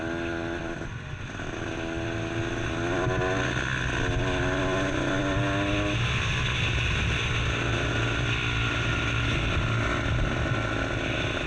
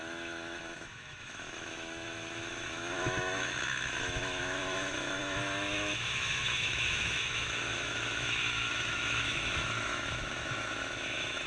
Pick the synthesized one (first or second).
second